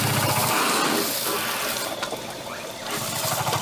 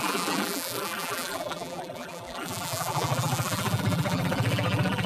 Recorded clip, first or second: first